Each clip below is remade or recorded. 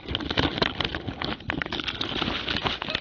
recorded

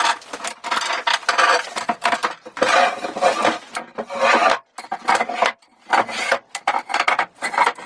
recorded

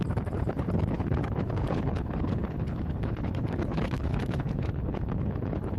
remade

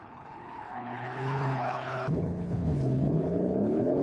remade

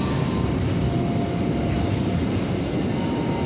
recorded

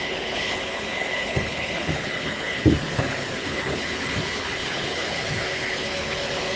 remade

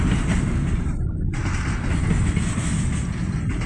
recorded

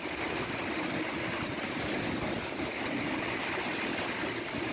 recorded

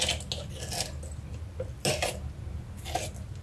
recorded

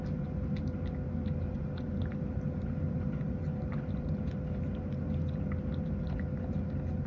recorded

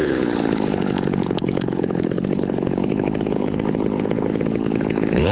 remade